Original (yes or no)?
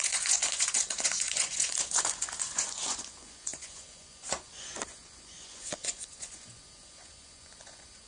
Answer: no